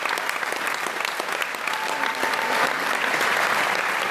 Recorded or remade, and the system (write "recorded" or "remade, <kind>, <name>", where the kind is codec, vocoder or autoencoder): recorded